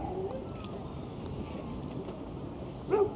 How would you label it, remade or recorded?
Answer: recorded